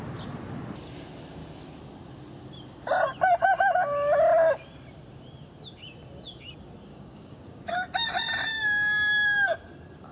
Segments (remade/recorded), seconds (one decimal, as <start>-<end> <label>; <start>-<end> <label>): 0.0-6.9 recorded; 6.9-7.7 remade; 7.7-10.1 recorded